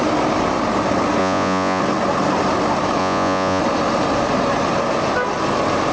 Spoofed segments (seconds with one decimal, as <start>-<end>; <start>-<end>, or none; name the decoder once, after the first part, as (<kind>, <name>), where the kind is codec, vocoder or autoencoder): 1.2-1.8 (vocoder, Vocos); 3.0-3.6